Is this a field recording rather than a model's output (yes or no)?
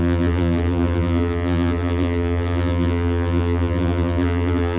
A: no